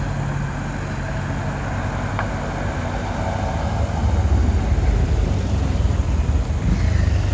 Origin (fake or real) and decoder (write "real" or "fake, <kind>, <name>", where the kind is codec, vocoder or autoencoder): real